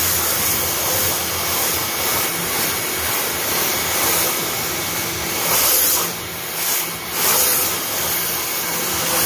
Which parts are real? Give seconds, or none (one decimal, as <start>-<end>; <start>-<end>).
0.0-9.3